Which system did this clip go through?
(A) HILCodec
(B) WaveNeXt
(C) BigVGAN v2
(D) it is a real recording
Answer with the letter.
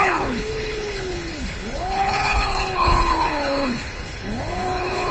A